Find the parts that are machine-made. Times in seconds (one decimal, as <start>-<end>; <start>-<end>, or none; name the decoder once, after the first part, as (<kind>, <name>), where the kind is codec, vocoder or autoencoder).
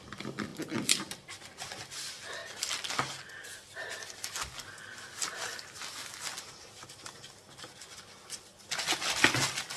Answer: none